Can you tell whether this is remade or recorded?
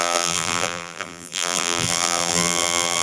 remade